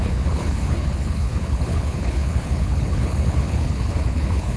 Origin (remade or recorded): remade